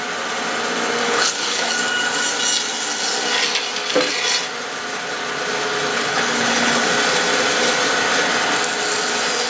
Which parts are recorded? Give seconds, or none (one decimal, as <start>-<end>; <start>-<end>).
0.0-1.0; 1.7-5.9; 6.9-9.5